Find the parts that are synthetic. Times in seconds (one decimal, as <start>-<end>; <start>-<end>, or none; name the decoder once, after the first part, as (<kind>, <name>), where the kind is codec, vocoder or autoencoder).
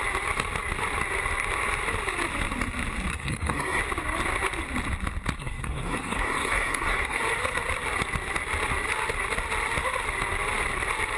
3.1-3.8 (codec, SNAC); 5.4-7.2